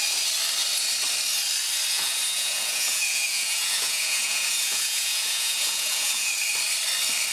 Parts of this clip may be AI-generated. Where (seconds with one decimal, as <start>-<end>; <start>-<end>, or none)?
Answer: 1.9-6.3